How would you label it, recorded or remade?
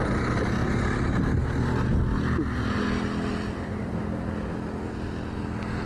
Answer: recorded